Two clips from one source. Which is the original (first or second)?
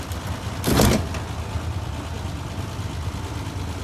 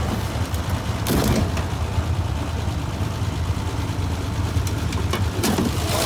first